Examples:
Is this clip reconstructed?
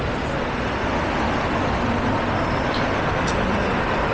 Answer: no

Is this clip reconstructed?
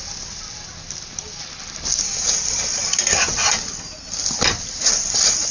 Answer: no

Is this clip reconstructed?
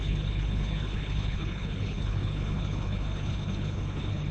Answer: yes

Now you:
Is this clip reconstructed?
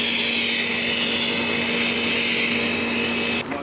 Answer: no